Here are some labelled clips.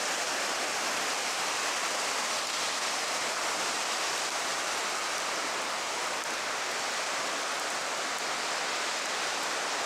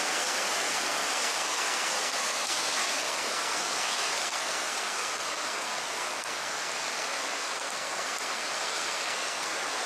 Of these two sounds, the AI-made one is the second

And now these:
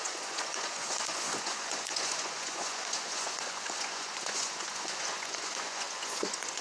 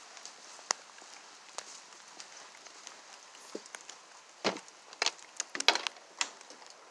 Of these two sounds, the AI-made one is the first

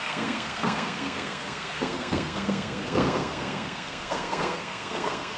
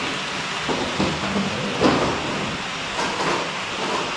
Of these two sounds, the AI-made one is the first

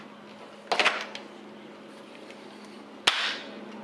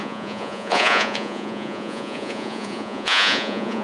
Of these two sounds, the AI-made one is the second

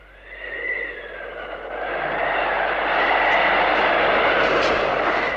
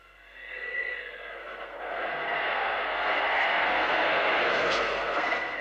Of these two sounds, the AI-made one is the second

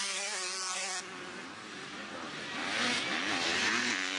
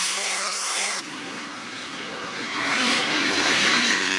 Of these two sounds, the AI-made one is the second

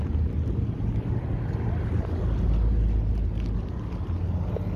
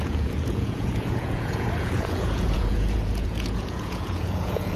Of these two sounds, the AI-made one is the second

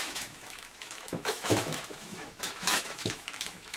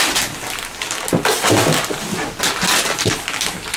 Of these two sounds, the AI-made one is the first